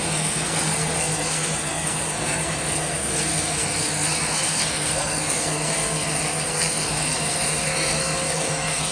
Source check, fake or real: fake